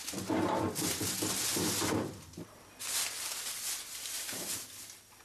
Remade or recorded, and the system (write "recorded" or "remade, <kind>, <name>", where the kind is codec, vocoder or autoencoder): recorded